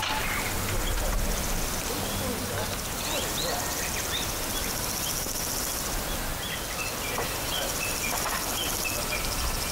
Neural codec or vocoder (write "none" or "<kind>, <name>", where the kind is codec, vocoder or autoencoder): none